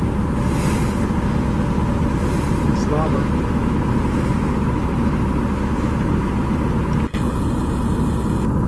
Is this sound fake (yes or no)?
no